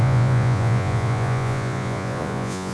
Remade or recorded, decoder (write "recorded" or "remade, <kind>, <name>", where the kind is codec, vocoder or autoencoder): remade, vocoder, Vocos